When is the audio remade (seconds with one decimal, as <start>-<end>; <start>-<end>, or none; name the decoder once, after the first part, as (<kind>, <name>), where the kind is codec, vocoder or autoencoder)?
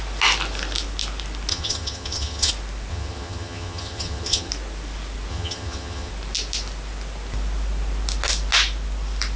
1.5-2.5 (vocoder, HiFi-GAN); 2.9-4.5; 5.3-6.1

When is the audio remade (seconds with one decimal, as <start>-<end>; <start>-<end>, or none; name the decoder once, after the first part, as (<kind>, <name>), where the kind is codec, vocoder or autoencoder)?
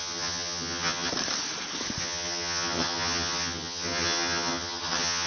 0.0-1.1 (vocoder, HiFi-GAN); 2.0-5.3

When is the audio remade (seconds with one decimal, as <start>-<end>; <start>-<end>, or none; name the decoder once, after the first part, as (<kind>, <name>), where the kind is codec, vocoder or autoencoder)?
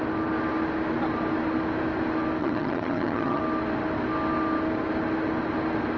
2.4-3.4 (vocoder, HiFi-GAN)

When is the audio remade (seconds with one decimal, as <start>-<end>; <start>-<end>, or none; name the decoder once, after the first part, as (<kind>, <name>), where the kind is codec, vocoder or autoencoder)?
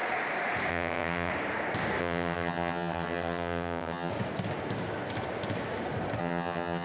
0.7-1.3 (vocoder, HiFi-GAN); 2.0-4.1; 6.2-6.8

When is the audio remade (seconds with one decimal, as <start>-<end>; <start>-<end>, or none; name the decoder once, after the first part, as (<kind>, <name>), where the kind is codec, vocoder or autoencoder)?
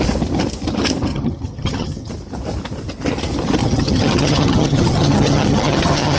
1.1-2.1 (vocoder, HiFi-GAN); 3.6-6.2